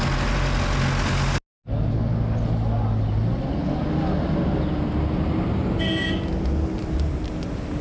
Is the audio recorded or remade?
recorded